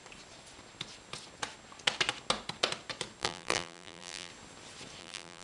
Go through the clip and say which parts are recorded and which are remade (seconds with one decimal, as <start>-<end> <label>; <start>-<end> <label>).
0.0-3.2 recorded; 3.2-4.3 remade; 4.3-5.0 recorded; 5.0-5.4 remade